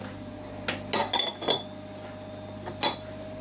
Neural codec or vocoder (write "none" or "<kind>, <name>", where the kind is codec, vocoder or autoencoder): none